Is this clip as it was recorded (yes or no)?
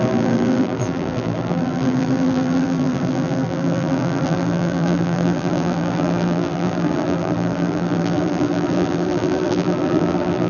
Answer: no